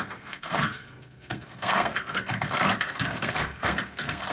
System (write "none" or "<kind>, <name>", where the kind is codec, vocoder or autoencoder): codec, SNAC